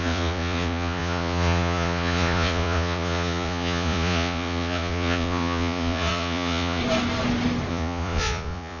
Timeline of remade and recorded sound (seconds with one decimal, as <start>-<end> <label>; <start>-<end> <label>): 0.0-6.8 remade; 6.8-7.7 recorded; 7.7-8.8 remade